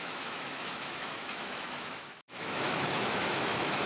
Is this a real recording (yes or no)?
no